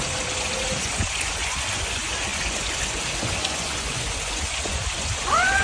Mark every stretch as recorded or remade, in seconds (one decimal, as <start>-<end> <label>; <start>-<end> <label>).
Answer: 0.0-5.6 remade